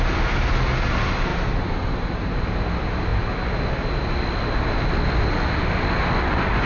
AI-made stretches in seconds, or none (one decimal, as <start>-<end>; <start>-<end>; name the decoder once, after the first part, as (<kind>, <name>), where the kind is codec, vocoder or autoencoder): 1.3-2.3 (vocoder, BigVGAN v2)